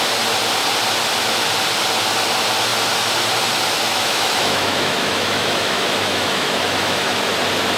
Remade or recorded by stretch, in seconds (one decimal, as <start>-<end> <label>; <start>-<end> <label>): 0.0-3.9 recorded; 3.9-7.2 remade; 7.2-7.8 recorded